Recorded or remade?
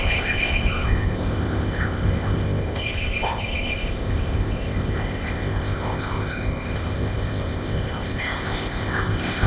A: remade